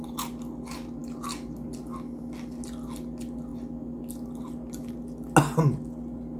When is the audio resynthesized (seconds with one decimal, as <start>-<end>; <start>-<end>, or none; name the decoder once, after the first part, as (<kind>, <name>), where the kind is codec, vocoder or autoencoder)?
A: none